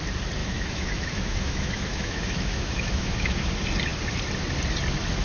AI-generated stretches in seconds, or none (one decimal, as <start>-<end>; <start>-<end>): 0.4-3.5